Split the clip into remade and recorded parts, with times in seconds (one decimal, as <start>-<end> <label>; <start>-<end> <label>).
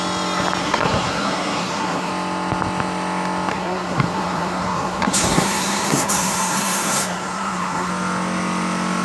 0.0-0.6 recorded; 0.6-2.1 remade; 2.1-3.5 recorded; 3.5-7.9 remade; 7.9-9.0 recorded